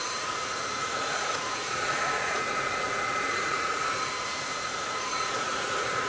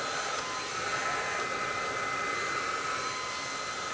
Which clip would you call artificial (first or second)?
first